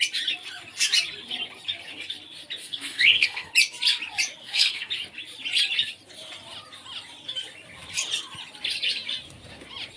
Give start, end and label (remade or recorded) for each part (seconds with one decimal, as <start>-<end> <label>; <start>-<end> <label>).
0.0-2.6 recorded; 2.6-3.5 remade; 3.5-4.4 recorded; 4.4-4.9 remade; 4.9-10.0 recorded